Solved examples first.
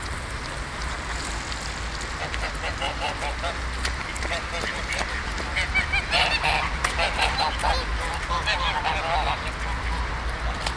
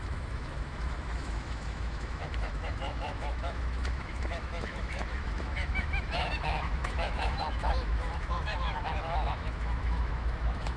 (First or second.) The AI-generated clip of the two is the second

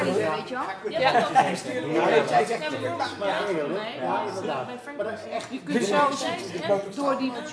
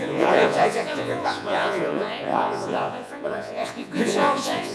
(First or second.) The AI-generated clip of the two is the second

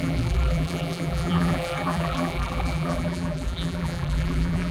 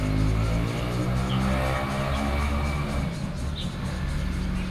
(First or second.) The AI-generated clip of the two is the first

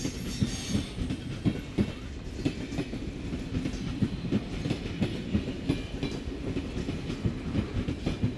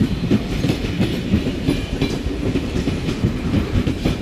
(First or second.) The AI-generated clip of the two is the second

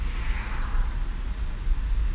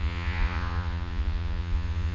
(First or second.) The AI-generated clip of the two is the second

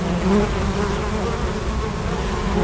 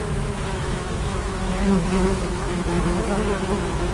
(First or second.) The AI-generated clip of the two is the second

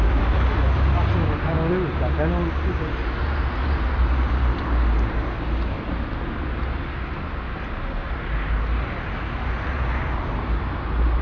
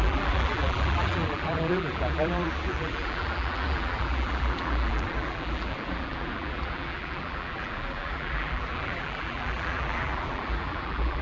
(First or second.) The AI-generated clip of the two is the second